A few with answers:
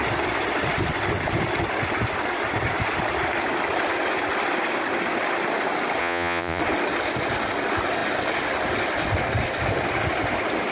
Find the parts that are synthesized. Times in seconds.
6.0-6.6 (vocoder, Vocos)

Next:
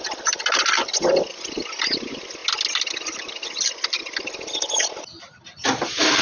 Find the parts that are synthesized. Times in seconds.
none

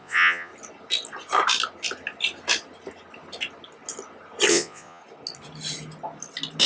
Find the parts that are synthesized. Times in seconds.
0.0-0.5 (vocoder, Vocos); 4.5-5.0